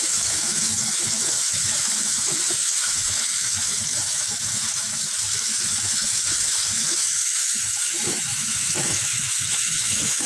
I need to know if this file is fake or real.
fake